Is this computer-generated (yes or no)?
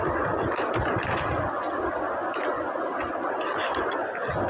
no